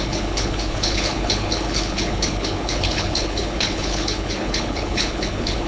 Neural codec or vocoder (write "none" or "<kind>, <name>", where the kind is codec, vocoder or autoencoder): codec, HILCodec